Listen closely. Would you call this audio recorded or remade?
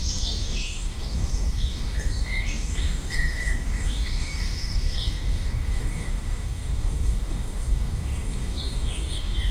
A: remade